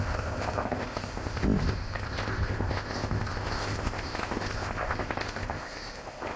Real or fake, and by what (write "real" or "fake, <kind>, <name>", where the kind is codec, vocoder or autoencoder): fake, codec, ZipCodec